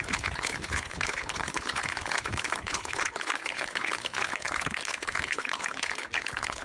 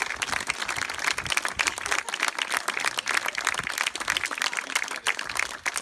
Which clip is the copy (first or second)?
first